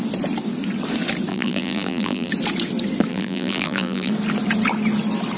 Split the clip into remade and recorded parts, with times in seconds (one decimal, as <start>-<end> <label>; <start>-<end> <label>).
0.0-1.3 recorded; 1.3-2.3 remade; 2.3-3.1 recorded; 3.1-4.1 remade; 4.1-5.4 recorded